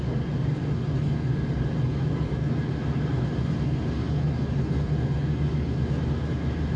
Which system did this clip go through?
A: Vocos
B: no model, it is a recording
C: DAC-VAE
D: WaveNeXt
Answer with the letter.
B